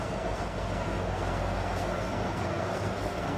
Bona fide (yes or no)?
no